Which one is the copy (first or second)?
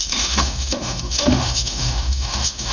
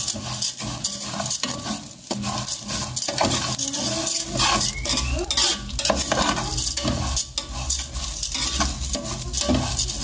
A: first